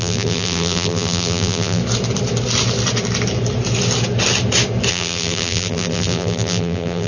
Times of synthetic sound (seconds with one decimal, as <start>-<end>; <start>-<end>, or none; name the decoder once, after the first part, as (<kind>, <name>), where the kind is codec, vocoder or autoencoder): 0.0-1.8 (vocoder, BigVGAN v2); 4.9-7.1